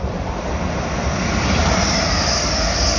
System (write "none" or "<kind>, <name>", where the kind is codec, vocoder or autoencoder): none